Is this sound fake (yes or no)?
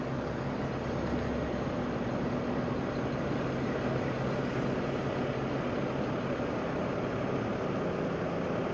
no